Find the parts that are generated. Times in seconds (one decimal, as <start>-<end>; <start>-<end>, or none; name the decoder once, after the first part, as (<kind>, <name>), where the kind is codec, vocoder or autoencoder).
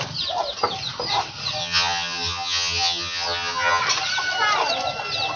1.6-3.8 (vocoder, HiFi-GAN)